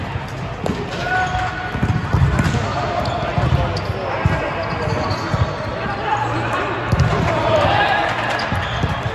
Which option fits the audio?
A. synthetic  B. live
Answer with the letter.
B